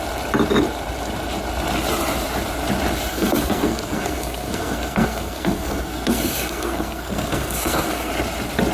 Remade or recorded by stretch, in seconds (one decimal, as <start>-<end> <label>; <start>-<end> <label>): 0.0-3.1 recorded; 3.1-8.1 remade; 8.1-8.7 recorded